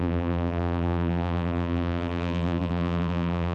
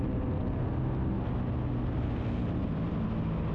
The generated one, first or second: first